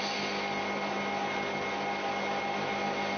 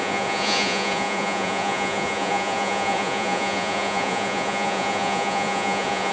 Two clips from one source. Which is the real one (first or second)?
first